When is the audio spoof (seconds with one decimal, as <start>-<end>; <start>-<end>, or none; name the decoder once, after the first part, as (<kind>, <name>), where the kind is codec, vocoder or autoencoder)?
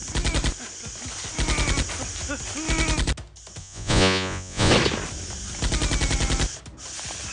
3.6-4.7 (vocoder, Vocos)